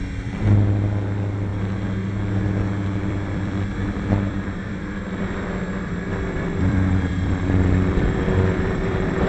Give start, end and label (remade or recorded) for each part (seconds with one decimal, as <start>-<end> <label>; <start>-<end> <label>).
0.0-9.3 remade